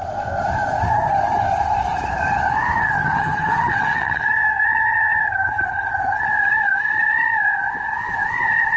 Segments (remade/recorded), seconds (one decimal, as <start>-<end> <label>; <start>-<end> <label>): 0.0-2.8 recorded; 2.8-6.3 remade; 6.3-8.8 recorded